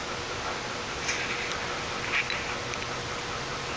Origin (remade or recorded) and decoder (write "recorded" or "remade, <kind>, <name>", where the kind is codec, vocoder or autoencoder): recorded